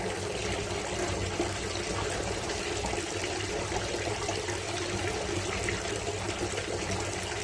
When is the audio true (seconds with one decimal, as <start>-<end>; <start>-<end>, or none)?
0.0-7.4